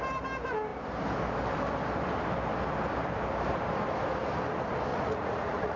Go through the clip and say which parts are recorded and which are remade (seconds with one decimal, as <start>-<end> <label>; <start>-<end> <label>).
0.0-4.9 recorded; 4.9-5.8 remade

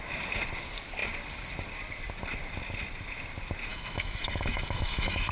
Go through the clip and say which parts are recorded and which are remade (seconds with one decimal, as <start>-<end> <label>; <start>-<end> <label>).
0.0-3.7 recorded; 3.7-5.3 remade